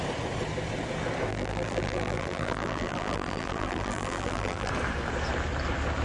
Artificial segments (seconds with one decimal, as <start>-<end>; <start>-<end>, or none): 1.3-4.7